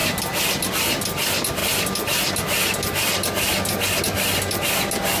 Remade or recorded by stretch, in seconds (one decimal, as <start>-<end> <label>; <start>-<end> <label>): 0.0-5.2 recorded